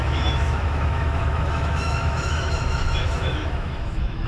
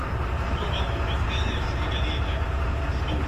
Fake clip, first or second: first